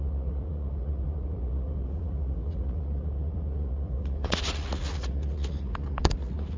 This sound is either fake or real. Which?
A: fake